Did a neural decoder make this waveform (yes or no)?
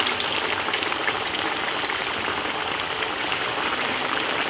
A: yes